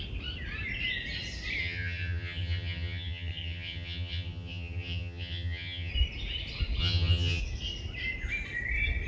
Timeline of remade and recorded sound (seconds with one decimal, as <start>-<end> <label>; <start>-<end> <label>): 0.0-1.6 recorded; 1.6-5.9 remade; 5.9-6.8 recorded; 6.8-7.4 remade; 7.4-9.1 recorded